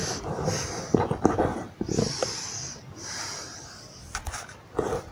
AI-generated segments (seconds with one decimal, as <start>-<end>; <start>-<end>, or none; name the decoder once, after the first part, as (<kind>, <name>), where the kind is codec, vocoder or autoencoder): none

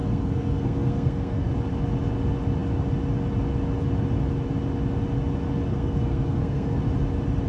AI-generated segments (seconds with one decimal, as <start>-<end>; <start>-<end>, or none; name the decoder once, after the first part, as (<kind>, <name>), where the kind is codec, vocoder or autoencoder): 0.0-1.5 (codec, SNAC); 5.7-6.8

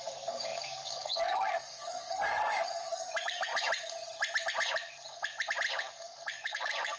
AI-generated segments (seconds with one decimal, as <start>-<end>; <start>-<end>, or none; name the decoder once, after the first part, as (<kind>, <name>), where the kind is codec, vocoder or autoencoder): 0.0-3.5 (codec, DAC); 5.8-7.0

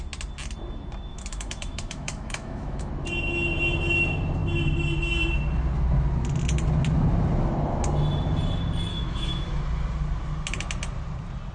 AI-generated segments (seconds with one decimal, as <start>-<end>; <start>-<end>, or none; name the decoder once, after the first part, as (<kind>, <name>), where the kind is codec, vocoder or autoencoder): 1.1-2.9 (autoencoder, DAC-VAE); 8.9-9.6